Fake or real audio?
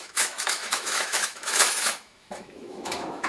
fake